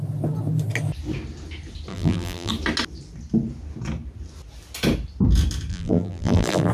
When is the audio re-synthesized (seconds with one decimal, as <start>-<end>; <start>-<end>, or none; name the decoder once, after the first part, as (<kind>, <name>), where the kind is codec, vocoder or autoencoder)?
1.9-2.5 (vocoder, BigVGAN v2); 5.7-6.7